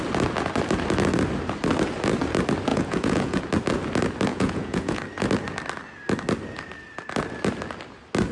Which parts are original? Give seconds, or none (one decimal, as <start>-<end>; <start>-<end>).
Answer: 0.0-2.7; 3.4-4.3; 5.0-8.3